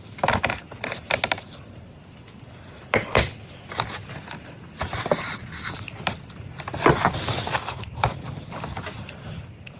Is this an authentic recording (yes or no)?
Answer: yes